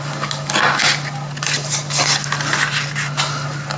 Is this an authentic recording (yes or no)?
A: yes